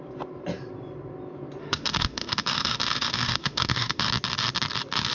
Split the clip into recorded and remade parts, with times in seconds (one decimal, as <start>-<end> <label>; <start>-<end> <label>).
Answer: 0.0-1.6 recorded; 1.6-4.1 remade; 4.1-5.1 recorded